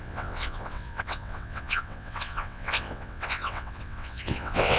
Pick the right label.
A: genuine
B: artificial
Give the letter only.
B